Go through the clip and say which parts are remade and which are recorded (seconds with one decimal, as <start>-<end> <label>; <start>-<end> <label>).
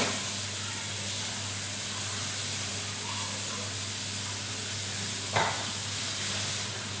0.0-7.0 recorded